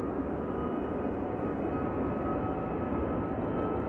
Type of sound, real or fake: real